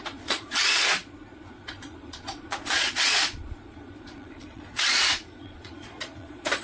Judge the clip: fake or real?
fake